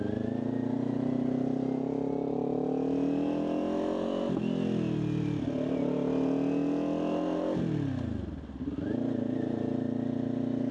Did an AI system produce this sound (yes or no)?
no